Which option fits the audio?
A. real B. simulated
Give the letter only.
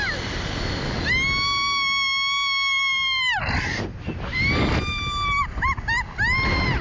A